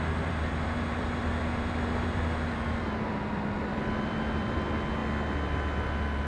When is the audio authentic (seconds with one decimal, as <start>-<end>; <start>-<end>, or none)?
5.0-6.3